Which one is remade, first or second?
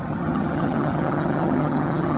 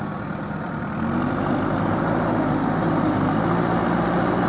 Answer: first